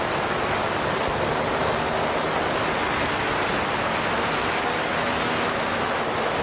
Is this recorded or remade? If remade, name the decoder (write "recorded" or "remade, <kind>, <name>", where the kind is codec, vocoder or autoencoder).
recorded